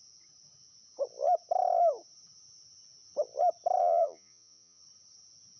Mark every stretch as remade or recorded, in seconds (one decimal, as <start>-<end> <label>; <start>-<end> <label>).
0.0-3.8 recorded; 3.8-4.8 remade; 4.8-5.6 recorded